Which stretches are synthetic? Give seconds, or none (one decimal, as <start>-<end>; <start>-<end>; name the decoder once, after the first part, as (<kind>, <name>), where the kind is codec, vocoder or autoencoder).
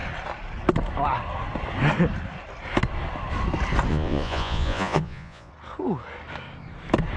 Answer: 3.9-5.5 (vocoder, Vocos)